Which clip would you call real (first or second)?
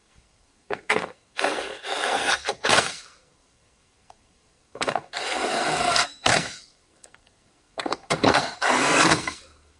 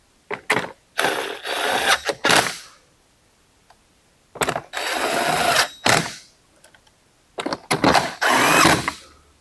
second